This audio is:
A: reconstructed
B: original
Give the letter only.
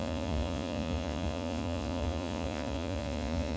A